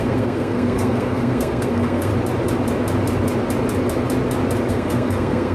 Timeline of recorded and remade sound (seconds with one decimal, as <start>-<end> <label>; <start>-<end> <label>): 0.0-2.1 remade; 2.1-4.7 recorded; 4.7-5.5 remade